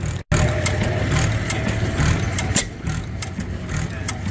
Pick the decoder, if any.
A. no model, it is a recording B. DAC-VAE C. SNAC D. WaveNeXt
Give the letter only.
A